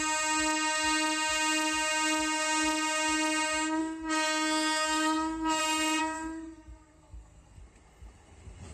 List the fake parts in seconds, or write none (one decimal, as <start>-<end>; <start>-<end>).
3.8-5.6; 6.0-7.6